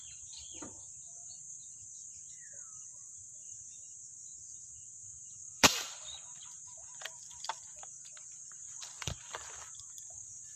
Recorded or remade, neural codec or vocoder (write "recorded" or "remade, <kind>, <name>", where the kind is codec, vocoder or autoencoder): remade, vocoder, BigVGAN v2